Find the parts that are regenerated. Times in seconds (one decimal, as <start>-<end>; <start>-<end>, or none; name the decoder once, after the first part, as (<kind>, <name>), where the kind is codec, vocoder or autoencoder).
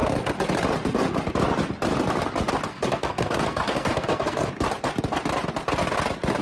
2.7-4.5 (codec, SNAC)